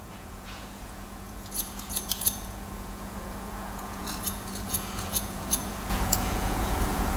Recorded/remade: remade